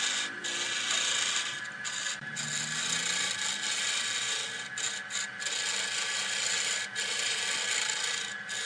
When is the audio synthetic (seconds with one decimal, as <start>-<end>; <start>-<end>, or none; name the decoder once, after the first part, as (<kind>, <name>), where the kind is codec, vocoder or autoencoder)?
none